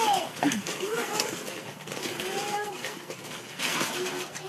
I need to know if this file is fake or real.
fake